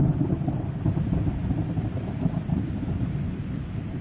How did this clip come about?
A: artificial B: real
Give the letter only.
B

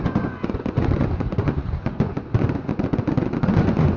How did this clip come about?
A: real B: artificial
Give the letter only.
B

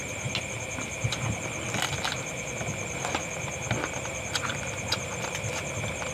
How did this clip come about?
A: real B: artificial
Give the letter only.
A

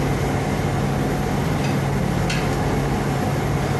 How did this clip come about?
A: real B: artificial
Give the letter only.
A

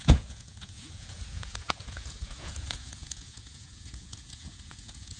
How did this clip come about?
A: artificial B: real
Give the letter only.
A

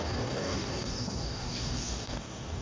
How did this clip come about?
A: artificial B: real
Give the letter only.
A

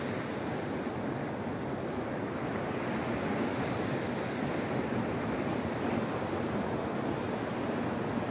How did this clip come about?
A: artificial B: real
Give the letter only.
B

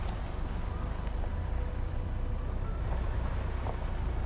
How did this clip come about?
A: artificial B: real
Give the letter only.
B